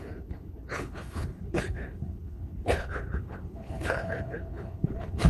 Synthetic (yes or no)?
yes